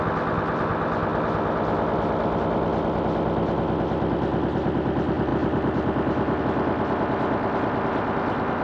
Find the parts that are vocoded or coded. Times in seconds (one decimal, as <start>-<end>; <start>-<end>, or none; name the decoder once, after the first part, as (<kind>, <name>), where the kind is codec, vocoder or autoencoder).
none